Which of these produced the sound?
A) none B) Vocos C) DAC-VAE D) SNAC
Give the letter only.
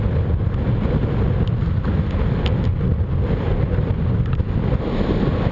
A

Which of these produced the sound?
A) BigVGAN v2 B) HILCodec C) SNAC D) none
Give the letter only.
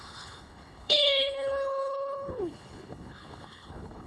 B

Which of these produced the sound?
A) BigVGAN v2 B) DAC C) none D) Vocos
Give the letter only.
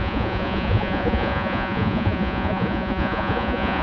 D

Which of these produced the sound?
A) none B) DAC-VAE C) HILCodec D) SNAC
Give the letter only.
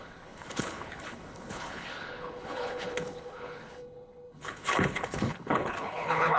C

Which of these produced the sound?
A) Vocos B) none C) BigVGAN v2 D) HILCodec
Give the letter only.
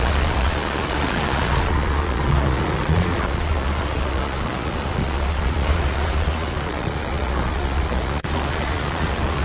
A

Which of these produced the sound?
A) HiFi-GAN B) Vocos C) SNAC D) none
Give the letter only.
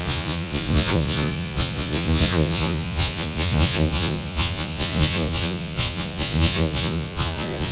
B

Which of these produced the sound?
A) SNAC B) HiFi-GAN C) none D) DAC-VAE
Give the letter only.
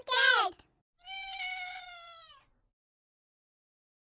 C